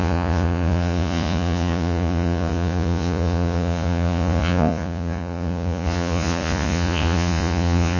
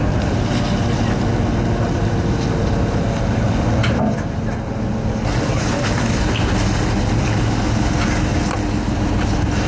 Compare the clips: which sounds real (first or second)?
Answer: second